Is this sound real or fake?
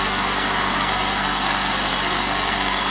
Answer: fake